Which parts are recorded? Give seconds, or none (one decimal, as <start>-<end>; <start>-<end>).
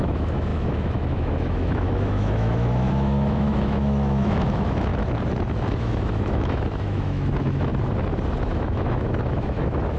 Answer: 4.9-5.8; 7.7-8.4